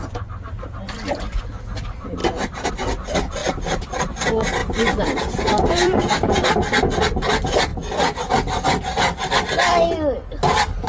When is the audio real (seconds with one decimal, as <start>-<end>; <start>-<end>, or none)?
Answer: 0.0-2.2; 2.7-3.4; 4.1-4.6; 6.3-10.9